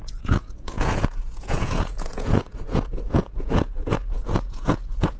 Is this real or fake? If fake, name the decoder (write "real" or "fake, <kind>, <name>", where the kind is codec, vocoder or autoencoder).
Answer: fake, vocoder, Vocos